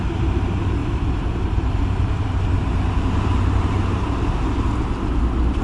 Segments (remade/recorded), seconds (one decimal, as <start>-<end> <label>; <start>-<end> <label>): 0.0-0.8 recorded; 0.8-4.2 remade; 4.2-5.6 recorded